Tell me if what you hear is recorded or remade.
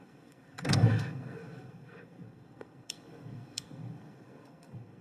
remade